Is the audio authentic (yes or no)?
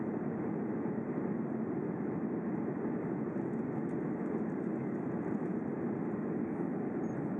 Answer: yes